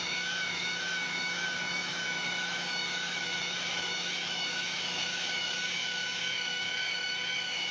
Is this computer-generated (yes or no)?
yes